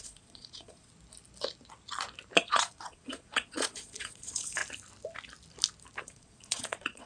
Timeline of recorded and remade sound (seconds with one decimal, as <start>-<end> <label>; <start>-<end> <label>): 0.0-0.9 remade; 0.9-2.4 recorded; 2.4-4.6 remade; 4.6-6.0 recorded; 6.0-7.1 remade

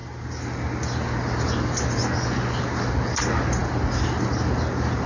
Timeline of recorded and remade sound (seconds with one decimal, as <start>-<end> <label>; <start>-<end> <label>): 0.0-2.0 recorded; 2.0-2.6 remade; 2.6-5.1 recorded

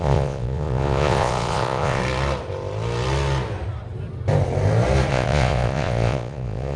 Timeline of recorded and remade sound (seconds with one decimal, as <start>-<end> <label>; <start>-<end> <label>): 0.0-2.0 remade; 2.0-5.1 recorded; 5.1-6.8 remade

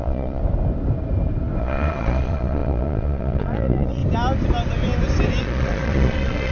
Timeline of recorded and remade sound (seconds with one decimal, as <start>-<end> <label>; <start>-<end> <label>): 0.0-0.4 remade; 0.4-1.6 recorded; 1.6-4.0 remade; 4.0-5.4 recorded; 5.4-6.5 remade

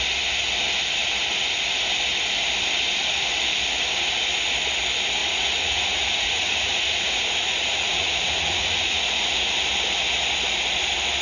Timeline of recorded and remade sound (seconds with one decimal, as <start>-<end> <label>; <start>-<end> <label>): 0.0-5.2 recorded; 5.2-9.5 remade; 9.5-11.2 recorded

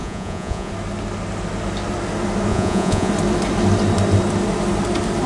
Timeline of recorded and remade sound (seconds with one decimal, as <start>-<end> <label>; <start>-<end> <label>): 0.0-0.7 remade; 0.7-2.5 recorded; 2.5-3.1 remade; 3.1-5.3 recorded

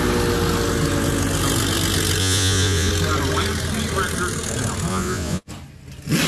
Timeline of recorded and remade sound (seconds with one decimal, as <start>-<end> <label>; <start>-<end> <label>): 0.0-2.2 recorded; 2.2-2.9 remade; 2.9-4.9 recorded; 4.9-5.5 remade; 5.5-6.3 recorded